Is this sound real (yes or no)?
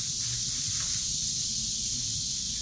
yes